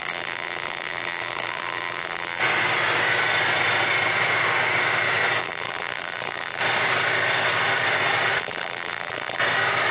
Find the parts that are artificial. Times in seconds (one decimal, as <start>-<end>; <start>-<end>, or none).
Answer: 0.0-2.4; 5.4-6.6; 8.4-9.4